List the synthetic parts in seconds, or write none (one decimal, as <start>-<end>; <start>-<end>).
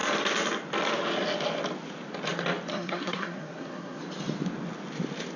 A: 2.7-4.0